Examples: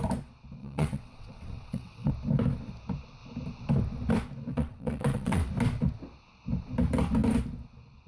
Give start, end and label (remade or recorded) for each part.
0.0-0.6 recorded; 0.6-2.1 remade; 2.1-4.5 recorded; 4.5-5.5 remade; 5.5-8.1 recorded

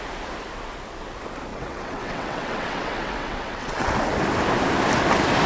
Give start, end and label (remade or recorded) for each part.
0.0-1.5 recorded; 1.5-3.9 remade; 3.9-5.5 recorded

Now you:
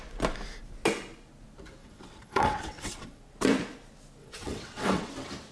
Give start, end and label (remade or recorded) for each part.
0.0-1.8 recorded; 1.8-3.2 remade; 3.2-4.2 recorded; 4.2-5.1 remade; 5.1-5.5 recorded

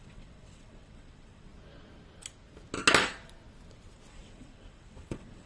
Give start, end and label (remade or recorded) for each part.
0.0-1.5 remade; 1.5-4.1 recorded; 4.1-5.5 remade

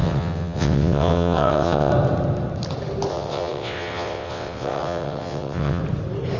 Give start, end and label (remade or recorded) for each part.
0.0-1.9 remade; 1.9-3.1 recorded; 3.1-5.8 remade; 5.8-6.4 recorded

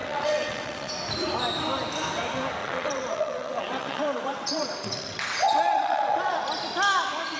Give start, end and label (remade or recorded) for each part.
0.0-0.9 remade; 0.9-2.6 recorded; 2.6-6.4 remade; 6.4-7.4 recorded

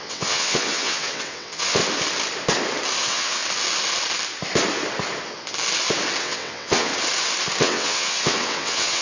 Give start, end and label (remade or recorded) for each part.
0.0-1.8 remade; 1.8-3.0 recorded; 3.0-3.4 remade; 3.4-6.2 recorded; 6.2-6.9 remade; 6.9-7.6 recorded; 7.6-9.0 remade

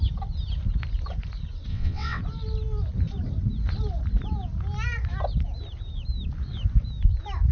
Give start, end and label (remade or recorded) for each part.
0.0-1.7 recorded; 1.7-2.2 remade; 2.2-7.5 recorded